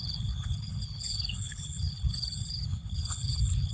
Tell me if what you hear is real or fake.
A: fake